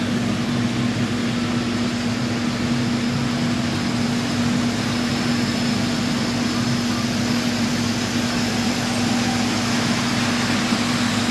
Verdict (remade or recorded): recorded